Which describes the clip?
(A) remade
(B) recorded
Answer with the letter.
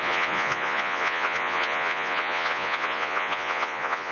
A